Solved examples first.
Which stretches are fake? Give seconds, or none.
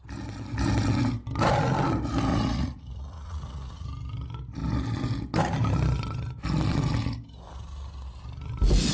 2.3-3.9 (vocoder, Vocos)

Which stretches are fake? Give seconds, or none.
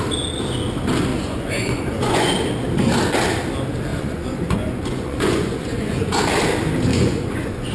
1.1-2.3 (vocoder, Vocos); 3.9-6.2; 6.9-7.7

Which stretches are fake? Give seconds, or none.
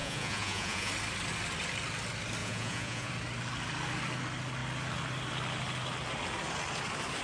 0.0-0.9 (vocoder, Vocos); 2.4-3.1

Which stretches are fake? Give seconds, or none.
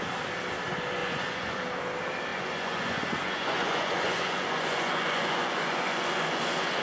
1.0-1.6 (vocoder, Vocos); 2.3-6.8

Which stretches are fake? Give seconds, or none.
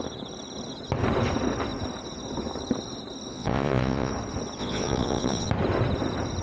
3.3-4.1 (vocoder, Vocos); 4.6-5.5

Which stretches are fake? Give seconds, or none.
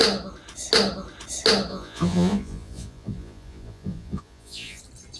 1.7-4.8 (vocoder, Vocos)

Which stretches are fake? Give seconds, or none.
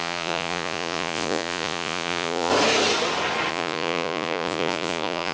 0.0-2.5 (vocoder, Vocos); 3.5-5.3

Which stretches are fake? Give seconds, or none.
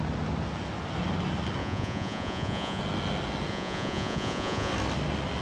1.6-2.8 (vocoder, Vocos); 3.5-4.7